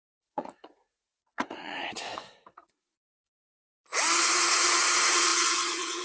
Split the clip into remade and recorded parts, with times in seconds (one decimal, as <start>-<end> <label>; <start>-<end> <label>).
0.0-3.5 remade; 3.5-4.3 recorded; 4.3-6.0 remade